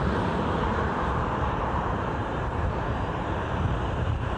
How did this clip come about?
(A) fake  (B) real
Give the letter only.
A